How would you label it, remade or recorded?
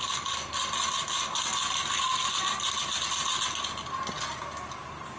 recorded